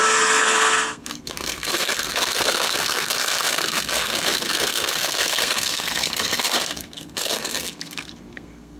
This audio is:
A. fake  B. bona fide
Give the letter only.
A